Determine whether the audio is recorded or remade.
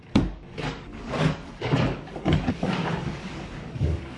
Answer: remade